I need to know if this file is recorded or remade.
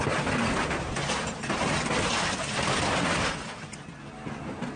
recorded